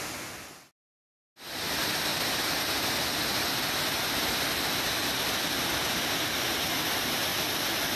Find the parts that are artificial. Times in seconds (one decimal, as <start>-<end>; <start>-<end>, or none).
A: 2.1-2.9